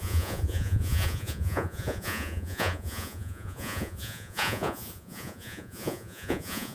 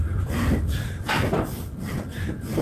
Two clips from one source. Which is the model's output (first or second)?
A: first